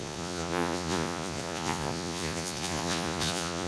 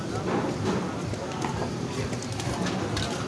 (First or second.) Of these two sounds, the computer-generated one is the first